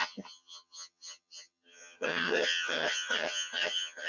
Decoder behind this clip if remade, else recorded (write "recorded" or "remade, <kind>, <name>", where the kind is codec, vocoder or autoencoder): remade, vocoder, HiFi-GAN